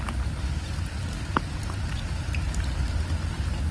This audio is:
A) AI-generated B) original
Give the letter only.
B